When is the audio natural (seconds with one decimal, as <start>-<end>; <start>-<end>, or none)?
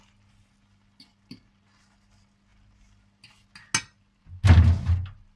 0.0-5.4